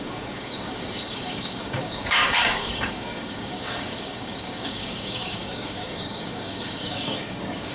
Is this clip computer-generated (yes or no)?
yes